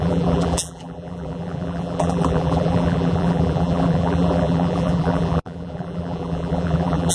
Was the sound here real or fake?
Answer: fake